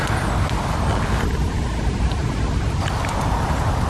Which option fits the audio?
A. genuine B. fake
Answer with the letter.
A